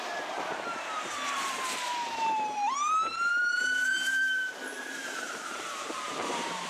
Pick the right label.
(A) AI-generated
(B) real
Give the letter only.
A